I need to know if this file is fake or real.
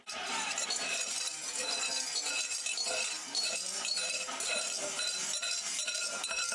real